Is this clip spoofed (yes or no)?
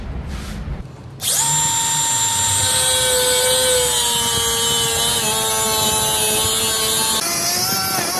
no